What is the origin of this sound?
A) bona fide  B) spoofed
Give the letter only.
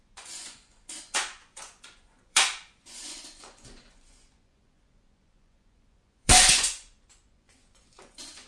B